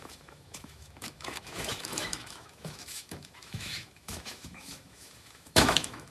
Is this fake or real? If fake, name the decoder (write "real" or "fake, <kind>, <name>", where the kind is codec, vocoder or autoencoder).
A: fake, autoencoder, DAC-VAE